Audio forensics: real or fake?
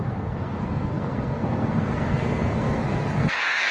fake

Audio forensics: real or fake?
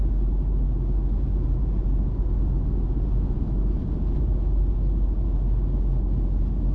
real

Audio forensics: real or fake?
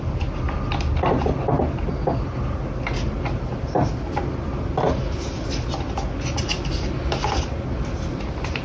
real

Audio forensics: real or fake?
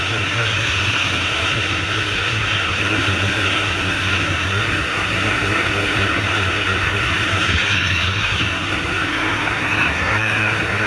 fake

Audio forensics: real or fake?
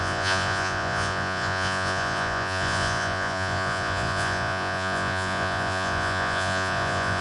fake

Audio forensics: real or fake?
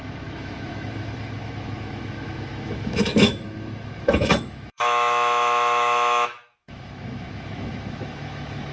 fake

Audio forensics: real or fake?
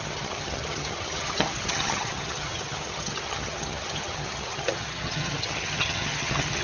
fake